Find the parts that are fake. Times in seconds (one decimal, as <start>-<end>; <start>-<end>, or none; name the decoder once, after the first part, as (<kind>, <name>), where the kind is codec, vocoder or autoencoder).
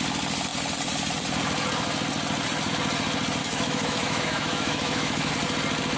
3.4-5.3 (autoencoder, DAC-VAE)